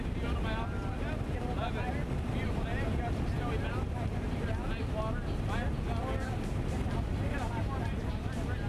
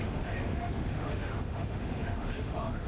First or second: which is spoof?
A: second